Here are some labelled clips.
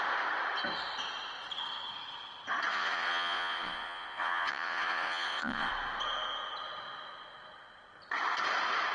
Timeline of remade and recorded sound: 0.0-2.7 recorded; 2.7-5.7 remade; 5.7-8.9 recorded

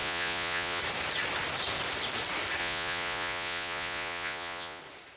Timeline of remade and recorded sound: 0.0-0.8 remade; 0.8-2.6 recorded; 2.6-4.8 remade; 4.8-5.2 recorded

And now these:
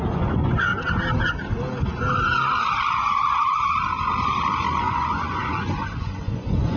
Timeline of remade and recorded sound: 0.0-0.7 remade; 0.7-4.8 recorded; 4.8-6.8 remade

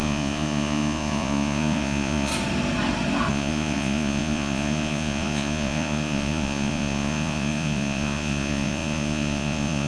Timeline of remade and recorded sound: 0.0-2.3 remade; 2.3-3.3 recorded; 3.3-9.9 remade

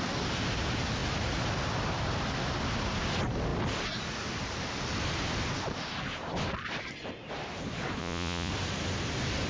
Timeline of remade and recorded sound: 0.0-8.0 recorded; 8.0-8.5 remade; 8.5-9.5 recorded